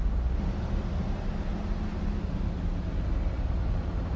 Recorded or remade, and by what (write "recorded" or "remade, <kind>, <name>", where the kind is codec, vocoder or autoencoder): recorded